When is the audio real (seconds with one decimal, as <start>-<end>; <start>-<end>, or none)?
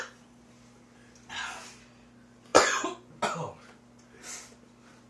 0.0-2.5; 3.2-5.1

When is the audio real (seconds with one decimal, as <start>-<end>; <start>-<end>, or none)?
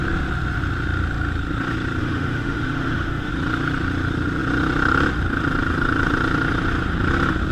0.0-2.0; 3.3-7.5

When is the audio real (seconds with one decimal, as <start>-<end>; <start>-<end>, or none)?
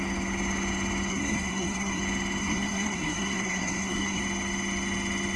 0.0-1.1; 2.0-2.4; 4.2-5.4